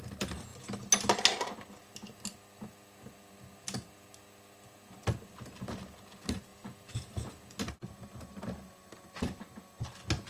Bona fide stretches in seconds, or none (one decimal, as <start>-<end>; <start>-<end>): 0.0-6.5; 7.6-10.3